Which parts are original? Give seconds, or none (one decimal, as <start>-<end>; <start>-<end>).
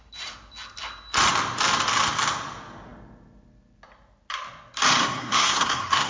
0.0-5.0